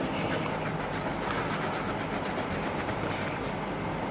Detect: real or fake real